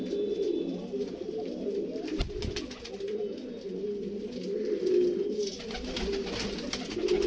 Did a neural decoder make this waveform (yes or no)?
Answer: no